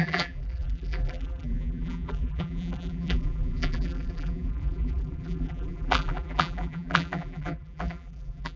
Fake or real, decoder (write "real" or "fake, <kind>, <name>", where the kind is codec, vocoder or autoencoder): fake, vocoder, BigVGAN v2